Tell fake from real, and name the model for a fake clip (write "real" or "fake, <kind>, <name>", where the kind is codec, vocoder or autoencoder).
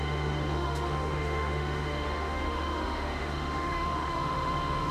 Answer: fake, autoencoder, DAC-VAE